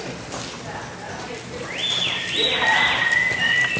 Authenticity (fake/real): real